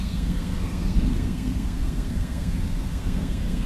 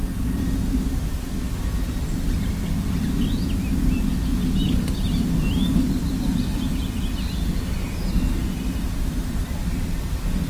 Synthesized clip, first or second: first